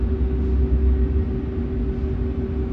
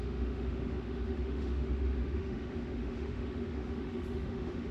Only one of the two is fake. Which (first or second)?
second